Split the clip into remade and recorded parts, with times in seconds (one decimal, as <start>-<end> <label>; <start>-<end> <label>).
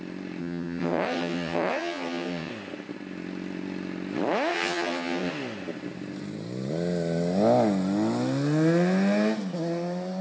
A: 0.0-0.4 recorded; 0.4-2.5 remade; 2.5-4.5 recorded; 4.5-5.3 remade; 5.3-10.2 recorded